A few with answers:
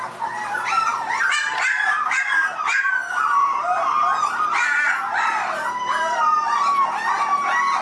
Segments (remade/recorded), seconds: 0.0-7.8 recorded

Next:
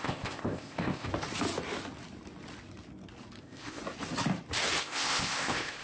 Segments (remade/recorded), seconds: 0.0-1.1 remade; 1.1-3.4 recorded; 3.4-3.8 remade; 3.8-4.8 recorded; 4.8-5.8 remade

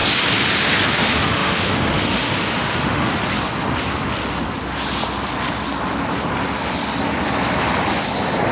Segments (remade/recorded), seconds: 0.0-0.9 recorded; 0.9-3.2 remade; 3.2-8.5 recorded

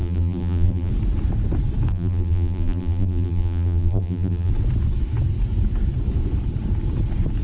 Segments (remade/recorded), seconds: 0.0-0.9 remade; 0.9-1.9 recorded; 1.9-4.5 remade; 4.5-7.4 recorded